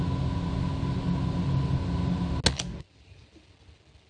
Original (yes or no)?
yes